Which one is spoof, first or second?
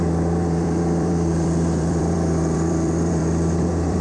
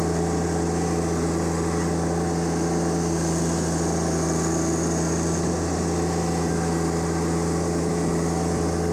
first